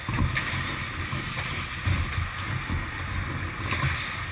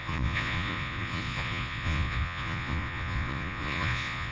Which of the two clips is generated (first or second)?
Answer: second